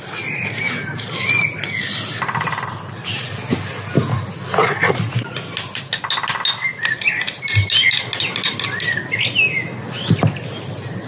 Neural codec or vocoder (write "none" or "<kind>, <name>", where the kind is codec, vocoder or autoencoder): none